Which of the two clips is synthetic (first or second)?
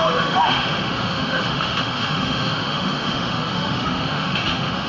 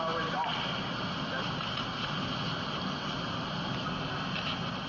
first